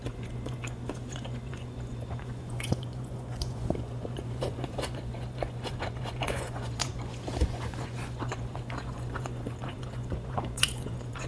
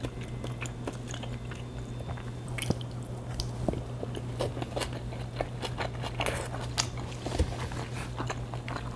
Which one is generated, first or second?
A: first